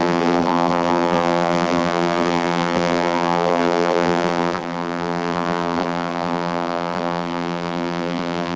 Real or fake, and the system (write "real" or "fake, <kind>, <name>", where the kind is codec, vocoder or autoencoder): fake, vocoder, BigVGAN v2